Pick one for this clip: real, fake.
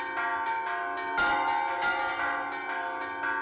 real